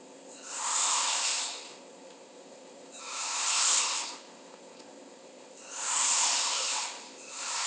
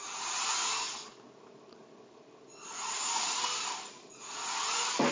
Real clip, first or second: second